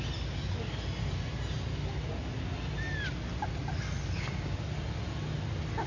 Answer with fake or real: real